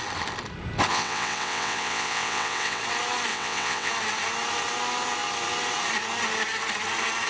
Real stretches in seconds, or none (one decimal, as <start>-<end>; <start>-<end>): 0.0-0.9; 2.8-3.3; 3.9-7.3